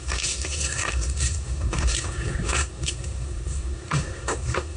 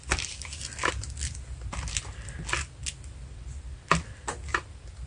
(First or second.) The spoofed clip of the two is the first